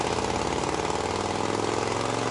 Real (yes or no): yes